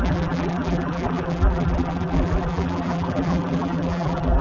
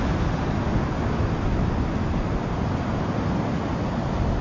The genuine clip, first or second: second